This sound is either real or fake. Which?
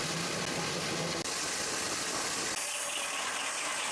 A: real